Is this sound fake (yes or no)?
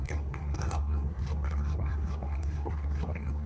yes